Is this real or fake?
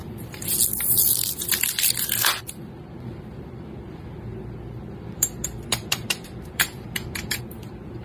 fake